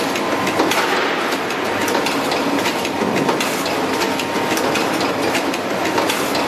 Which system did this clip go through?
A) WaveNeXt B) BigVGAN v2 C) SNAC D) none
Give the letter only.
D